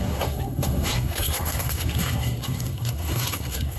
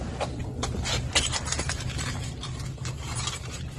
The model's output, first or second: first